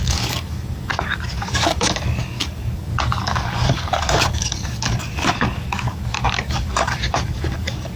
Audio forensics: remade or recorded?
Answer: remade